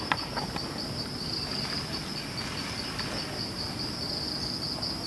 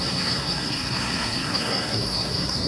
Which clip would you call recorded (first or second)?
first